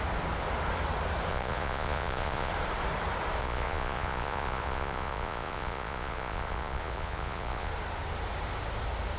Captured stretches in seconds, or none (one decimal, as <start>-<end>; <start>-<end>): 0.0-1.3; 2.5-3.4; 7.7-9.2